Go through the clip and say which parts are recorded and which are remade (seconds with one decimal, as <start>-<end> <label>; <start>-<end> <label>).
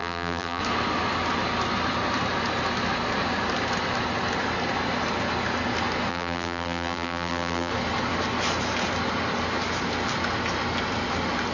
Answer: 0.0-0.6 remade; 0.6-6.1 recorded; 6.1-7.7 remade; 7.7-11.5 recorded